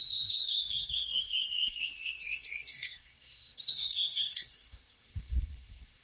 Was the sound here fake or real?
fake